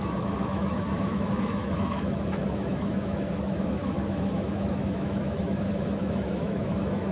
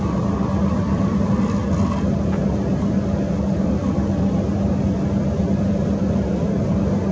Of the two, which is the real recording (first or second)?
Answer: second